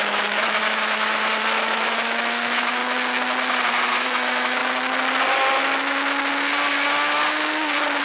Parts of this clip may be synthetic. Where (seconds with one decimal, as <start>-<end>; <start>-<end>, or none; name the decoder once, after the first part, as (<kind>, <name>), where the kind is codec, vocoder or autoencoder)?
0.0-2.8 (autoencoder, DAC-VAE); 3.9-4.6